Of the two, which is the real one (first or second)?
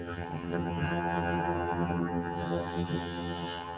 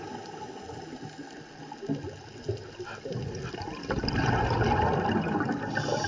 second